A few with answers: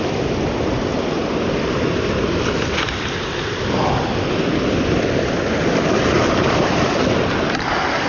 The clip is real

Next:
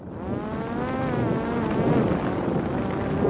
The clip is real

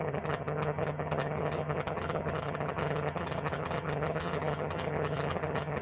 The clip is fake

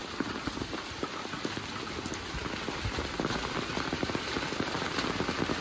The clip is real